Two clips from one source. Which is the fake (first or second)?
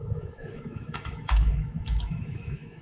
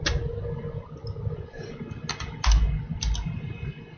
first